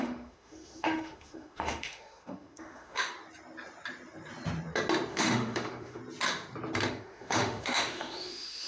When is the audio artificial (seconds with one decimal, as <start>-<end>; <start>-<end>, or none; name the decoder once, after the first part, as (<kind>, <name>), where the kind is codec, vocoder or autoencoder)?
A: 0.0-3.1 (autoencoder, DAC-VAE); 5.1-6.0; 6.9-8.7